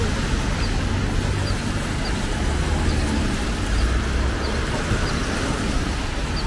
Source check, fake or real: real